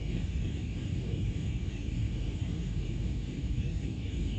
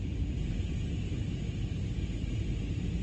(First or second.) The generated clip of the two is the first